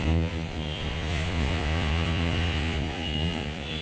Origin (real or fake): fake